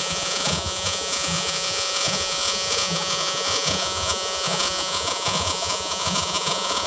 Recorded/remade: remade